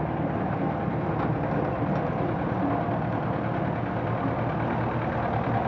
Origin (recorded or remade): recorded